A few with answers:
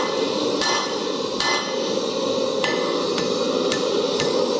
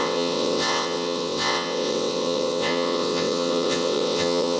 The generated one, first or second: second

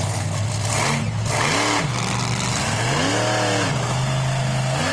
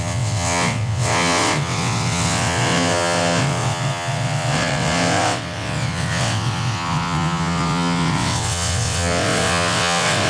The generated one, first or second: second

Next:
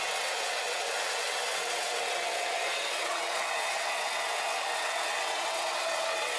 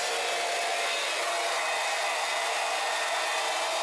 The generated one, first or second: first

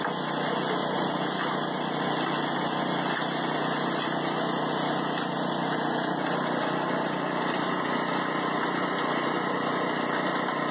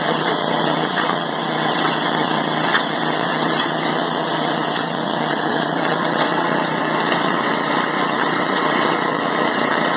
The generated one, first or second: second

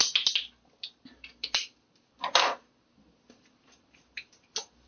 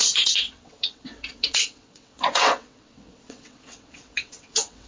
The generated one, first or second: second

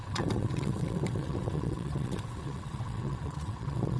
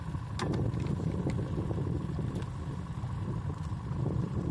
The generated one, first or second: first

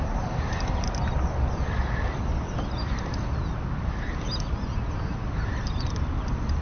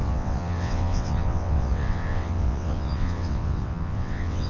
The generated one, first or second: second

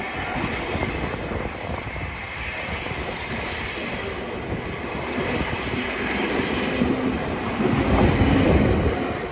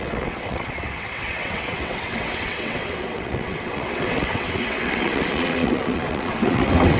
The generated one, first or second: second